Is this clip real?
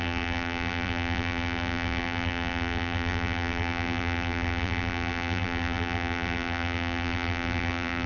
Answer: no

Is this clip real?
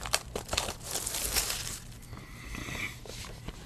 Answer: no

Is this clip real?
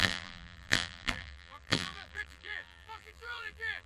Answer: no